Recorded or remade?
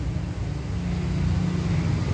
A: recorded